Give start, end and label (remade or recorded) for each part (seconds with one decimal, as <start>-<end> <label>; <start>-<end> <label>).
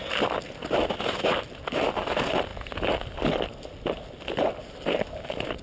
0.0-5.6 recorded